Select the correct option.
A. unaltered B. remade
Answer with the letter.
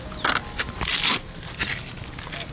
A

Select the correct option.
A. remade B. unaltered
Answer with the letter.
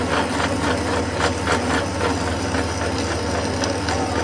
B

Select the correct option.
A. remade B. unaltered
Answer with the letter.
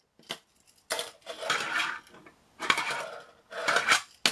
B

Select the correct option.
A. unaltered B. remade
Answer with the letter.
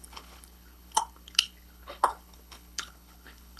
B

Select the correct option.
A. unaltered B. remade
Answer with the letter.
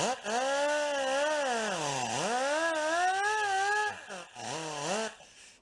A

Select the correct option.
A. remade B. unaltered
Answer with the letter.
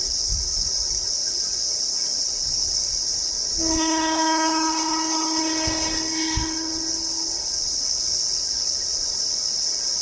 A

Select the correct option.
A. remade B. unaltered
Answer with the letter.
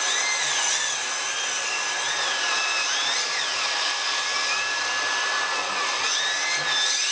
B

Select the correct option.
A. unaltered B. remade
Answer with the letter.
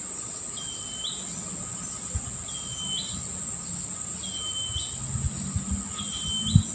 A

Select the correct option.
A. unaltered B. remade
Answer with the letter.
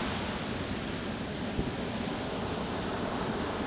A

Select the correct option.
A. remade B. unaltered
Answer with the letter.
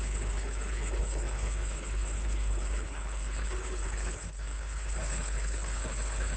A